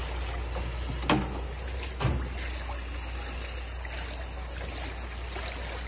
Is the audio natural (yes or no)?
yes